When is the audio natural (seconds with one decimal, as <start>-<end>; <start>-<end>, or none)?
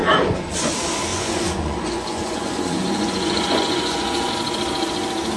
0.7-1.1; 4.3-5.4